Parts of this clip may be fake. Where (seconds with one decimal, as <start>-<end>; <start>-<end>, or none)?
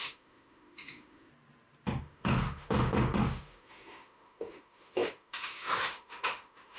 0.0-1.3; 2.0-6.8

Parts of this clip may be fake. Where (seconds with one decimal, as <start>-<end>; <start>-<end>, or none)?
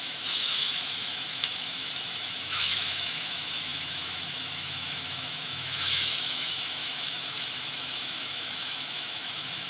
0.0-9.7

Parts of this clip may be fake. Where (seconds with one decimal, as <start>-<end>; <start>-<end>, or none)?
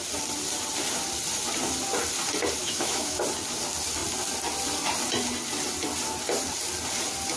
2.6-3.2